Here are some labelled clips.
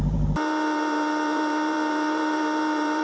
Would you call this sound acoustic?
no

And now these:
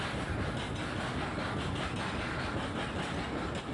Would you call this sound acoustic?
yes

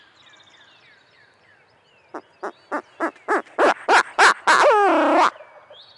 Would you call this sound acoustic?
yes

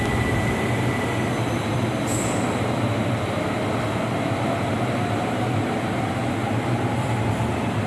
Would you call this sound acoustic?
yes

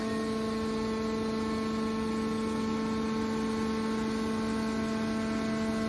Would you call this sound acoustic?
yes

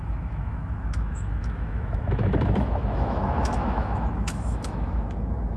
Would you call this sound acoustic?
no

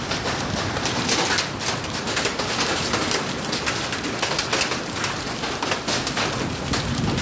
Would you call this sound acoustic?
yes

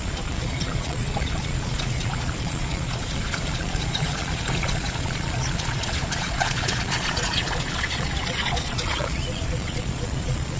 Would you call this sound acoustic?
no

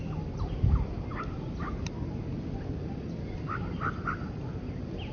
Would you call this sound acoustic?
yes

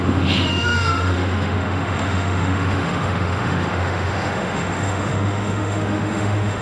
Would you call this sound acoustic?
no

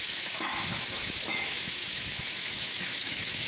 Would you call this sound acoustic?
no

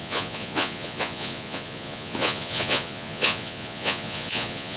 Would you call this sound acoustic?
no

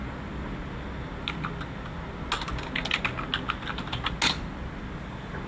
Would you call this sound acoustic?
yes